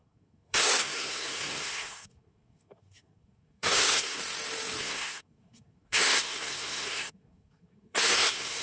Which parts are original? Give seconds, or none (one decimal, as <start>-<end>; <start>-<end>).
4.2-4.8